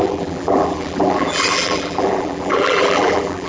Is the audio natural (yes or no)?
no